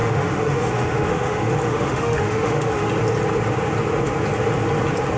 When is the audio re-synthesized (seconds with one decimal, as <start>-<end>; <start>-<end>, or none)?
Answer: 0.0-2.9